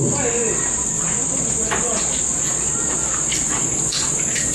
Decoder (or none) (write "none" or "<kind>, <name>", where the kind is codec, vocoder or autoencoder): none